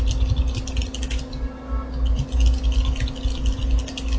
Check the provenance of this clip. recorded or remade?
recorded